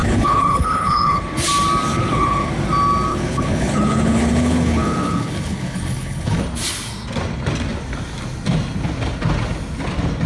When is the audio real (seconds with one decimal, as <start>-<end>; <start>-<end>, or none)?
1.2-1.9; 2.5-3.1; 6.4-10.3